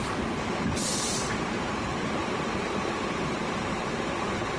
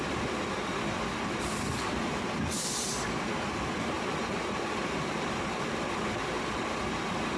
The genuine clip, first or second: second